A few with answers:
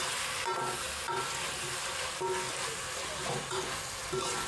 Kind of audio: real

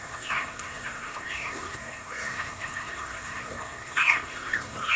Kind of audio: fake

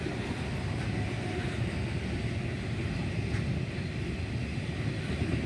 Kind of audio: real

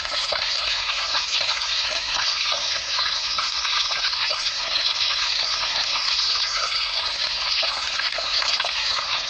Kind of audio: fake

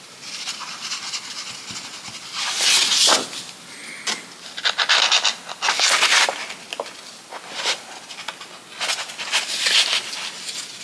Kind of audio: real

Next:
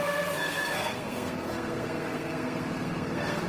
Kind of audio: fake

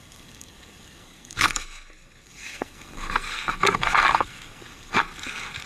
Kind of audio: fake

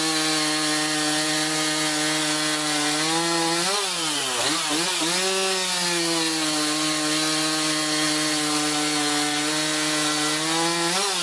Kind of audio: real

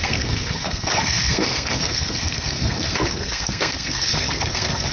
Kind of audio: fake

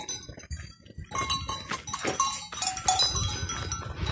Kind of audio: real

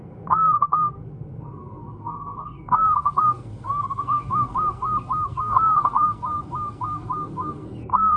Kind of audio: fake